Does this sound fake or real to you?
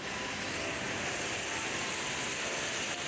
real